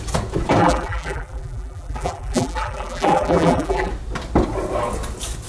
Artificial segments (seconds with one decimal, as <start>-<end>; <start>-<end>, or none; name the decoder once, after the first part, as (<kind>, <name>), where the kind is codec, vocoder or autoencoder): 0.6-3.9 (vocoder, BigVGAN v2)